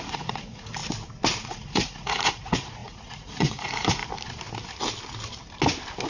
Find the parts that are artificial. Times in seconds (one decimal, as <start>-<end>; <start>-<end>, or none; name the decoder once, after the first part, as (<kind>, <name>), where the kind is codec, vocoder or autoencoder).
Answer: 0.0-0.8 (vocoder, Vocos); 1.4-4.0